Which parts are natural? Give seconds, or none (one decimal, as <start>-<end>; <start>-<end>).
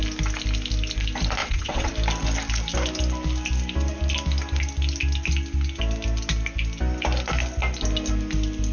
0.0-1.4; 1.9-8.7